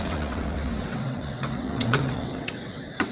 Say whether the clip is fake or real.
fake